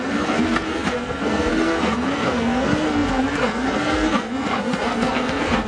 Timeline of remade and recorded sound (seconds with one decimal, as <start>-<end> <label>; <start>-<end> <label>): 0.0-5.7 remade